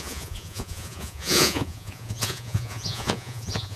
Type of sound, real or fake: fake